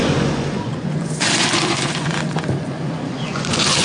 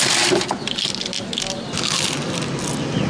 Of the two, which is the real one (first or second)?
second